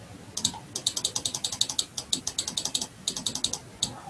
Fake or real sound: real